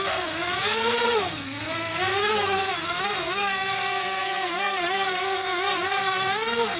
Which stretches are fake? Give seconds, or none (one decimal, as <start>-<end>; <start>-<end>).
0.0-6.8